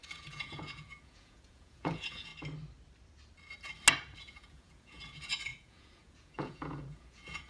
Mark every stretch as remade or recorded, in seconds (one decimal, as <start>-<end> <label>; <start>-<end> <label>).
0.0-2.3 remade; 2.3-4.2 recorded; 4.2-7.5 remade